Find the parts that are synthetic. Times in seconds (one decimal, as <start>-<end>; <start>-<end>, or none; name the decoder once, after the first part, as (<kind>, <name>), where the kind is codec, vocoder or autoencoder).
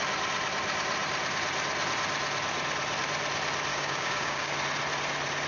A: 3.7-4.5 (codec, DAC)